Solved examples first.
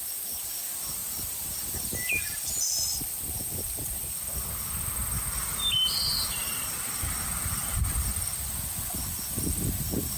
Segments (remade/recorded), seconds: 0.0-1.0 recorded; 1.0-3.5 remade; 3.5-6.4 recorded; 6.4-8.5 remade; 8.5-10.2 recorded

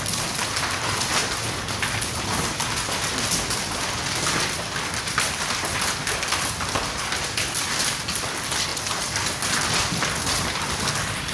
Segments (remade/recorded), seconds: 0.0-11.3 recorded

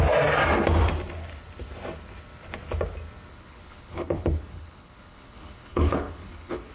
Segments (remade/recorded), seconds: 0.0-3.3 recorded; 3.3-6.7 remade

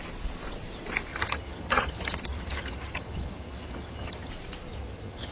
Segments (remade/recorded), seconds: 0.0-1.1 recorded; 1.1-4.3 remade; 4.3-4.7 recorded; 4.7-5.3 remade

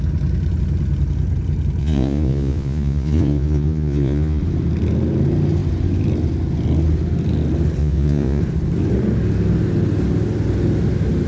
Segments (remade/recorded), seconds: 0.0-1.8 recorded; 1.8-4.4 remade; 4.4-7.8 recorded; 7.8-8.4 remade; 8.4-11.3 recorded